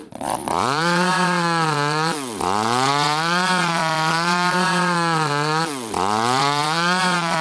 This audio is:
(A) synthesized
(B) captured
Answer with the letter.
A